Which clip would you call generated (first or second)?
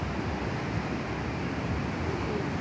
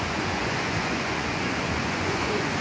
second